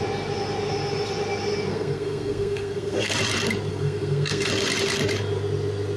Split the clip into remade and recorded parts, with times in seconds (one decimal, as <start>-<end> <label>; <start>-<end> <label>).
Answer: 0.0-1.7 recorded; 1.7-3.1 remade; 3.1-3.7 recorded; 3.7-4.5 remade; 4.5-6.0 recorded